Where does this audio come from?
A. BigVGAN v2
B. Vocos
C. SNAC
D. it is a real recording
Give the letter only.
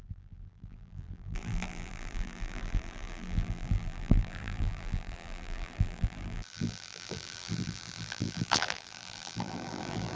A